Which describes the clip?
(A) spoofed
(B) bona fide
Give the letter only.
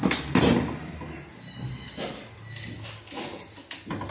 B